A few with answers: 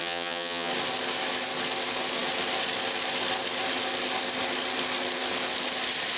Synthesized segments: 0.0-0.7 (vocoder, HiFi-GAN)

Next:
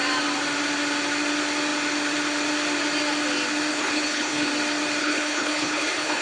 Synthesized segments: 3.7-4.5 (codec, HILCodec); 5.0-6.2

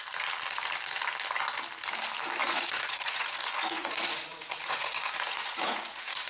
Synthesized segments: 2.4-6.3 (vocoder, Vocos)